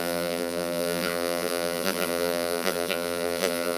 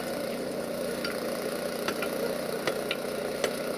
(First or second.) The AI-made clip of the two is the first